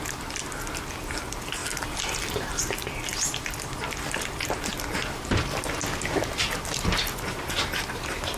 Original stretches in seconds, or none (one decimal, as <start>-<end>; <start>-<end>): 0.0-1.6; 2.6-3.1; 5.4-8.4